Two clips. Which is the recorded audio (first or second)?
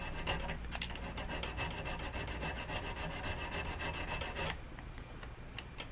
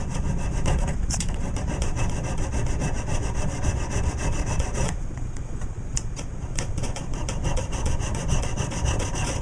first